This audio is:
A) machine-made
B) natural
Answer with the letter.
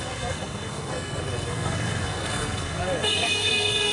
A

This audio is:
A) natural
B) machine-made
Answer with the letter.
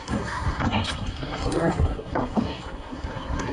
B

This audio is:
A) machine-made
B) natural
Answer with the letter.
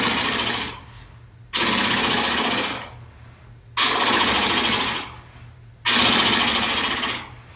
B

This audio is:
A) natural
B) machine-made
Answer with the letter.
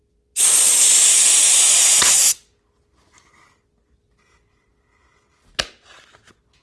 A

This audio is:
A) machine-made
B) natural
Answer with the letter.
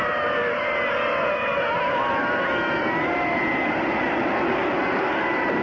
B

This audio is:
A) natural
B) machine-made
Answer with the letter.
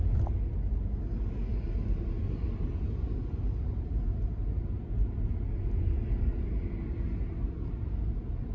A